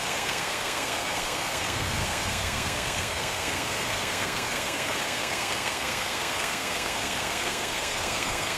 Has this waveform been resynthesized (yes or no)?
yes